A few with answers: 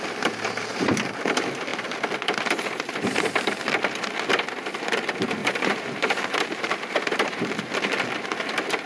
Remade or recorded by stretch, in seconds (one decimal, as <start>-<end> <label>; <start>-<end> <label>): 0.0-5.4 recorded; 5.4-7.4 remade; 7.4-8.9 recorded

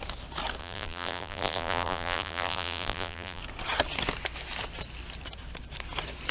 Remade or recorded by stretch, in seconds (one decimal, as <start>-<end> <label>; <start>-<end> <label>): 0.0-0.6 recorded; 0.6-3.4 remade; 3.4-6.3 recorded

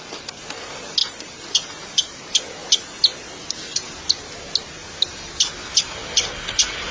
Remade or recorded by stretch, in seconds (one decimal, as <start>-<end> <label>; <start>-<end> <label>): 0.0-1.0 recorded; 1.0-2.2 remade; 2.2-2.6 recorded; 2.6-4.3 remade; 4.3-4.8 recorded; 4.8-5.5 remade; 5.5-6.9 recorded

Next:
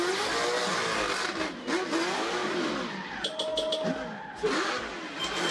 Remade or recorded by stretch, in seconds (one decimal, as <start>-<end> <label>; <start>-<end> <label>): 0.0-0.7 recorded; 0.7-1.6 remade; 1.6-2.4 recorded; 2.4-3.1 remade; 3.1-5.5 recorded